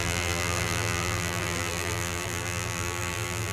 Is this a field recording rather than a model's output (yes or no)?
no